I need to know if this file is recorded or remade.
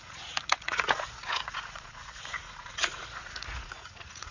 remade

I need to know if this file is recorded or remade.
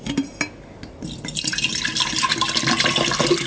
recorded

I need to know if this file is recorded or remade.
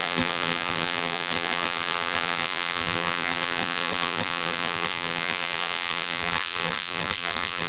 remade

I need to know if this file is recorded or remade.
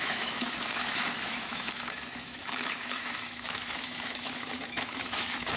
remade